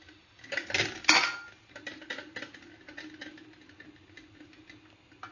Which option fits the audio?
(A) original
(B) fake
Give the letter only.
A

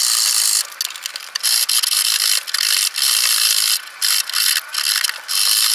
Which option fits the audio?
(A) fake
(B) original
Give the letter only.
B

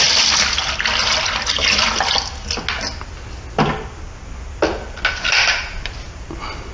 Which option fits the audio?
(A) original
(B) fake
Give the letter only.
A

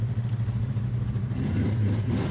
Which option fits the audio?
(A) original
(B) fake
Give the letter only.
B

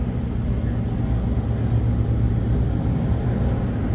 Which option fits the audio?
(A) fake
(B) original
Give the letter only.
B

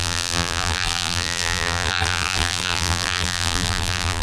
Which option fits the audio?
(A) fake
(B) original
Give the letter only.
A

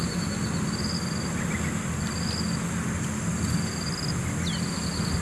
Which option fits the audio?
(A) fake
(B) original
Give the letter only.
B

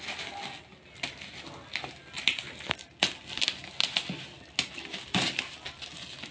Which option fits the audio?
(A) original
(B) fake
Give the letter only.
A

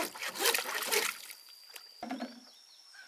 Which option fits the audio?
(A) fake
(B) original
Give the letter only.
B